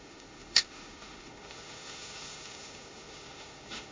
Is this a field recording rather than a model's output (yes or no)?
no